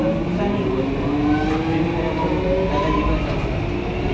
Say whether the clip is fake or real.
real